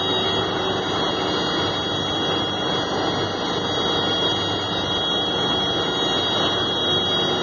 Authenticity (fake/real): real